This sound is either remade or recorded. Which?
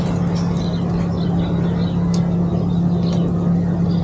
recorded